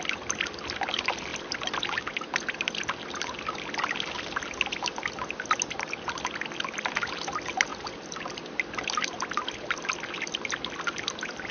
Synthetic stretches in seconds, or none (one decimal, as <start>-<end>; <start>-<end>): 7.7-8.3